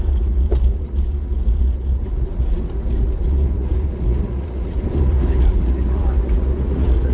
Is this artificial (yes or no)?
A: yes